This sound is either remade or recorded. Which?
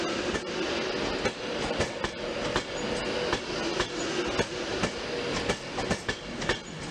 recorded